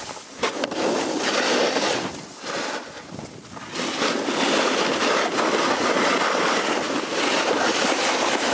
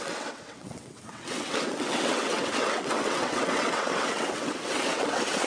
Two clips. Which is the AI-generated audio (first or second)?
second